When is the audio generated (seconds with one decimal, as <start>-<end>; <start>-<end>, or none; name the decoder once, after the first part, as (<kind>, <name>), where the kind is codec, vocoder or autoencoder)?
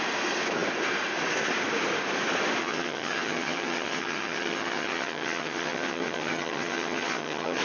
2.6-7.6 (vocoder, HiFi-GAN)